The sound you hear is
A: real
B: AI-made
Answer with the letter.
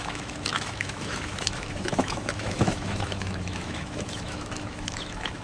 B